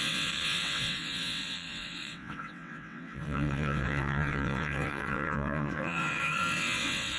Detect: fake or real fake